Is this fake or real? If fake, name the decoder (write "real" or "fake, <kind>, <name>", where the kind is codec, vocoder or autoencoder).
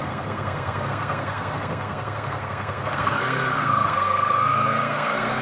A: fake, codec, SNAC